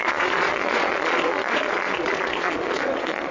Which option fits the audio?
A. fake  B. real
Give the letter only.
A